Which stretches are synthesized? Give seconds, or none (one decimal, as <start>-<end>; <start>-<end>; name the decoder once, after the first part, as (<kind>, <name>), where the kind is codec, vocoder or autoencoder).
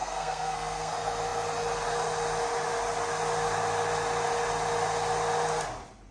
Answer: 0.0-0.9 (codec, SNAC)